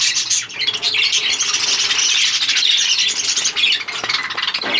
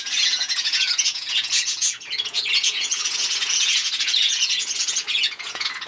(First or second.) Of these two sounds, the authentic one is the first